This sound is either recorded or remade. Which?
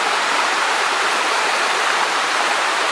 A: remade